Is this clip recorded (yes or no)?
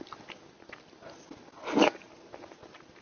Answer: yes